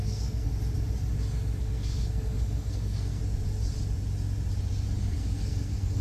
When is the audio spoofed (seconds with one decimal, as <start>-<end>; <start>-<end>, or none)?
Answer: 0.0-0.5; 1.6-3.2; 5.0-6.0